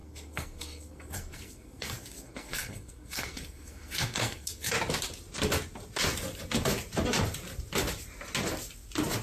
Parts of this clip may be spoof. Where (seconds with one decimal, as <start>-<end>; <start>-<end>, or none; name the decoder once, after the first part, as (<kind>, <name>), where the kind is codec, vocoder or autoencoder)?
0.0-4.7 (codec, SNAC)

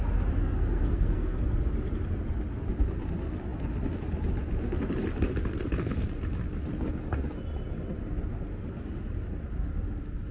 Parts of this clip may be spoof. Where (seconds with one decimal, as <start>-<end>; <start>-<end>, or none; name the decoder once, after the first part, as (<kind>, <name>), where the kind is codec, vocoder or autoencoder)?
0.4-1.4 (codec, SNAC)

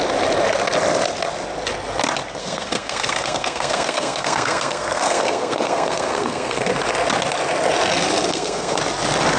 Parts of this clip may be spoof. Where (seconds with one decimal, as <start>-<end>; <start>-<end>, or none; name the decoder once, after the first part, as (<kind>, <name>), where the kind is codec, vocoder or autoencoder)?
2.4-6.7 (codec, SNAC); 8.3-8.8

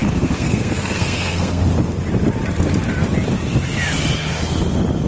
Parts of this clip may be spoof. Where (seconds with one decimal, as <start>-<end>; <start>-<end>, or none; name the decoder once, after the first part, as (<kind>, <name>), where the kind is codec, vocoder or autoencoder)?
0.0-1.6 (codec, SNAC)

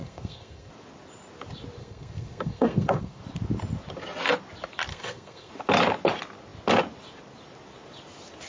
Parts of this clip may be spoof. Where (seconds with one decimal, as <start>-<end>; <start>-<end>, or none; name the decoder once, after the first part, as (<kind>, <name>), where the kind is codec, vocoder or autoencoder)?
0.0-0.7 (codec, SNAC); 1.8-3.2; 4.9-5.5

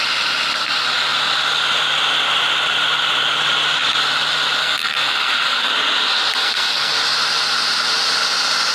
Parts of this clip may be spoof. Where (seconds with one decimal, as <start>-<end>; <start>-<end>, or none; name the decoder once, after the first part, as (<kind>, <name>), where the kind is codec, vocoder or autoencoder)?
4.6-5.7 (codec, SNAC); 6.3-6.9